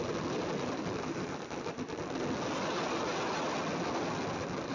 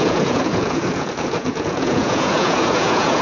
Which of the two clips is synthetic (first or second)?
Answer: second